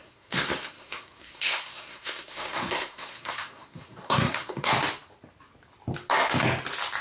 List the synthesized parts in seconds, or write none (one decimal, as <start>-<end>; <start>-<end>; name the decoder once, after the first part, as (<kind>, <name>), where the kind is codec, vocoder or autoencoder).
0.0-4.7 (codec, SNAC)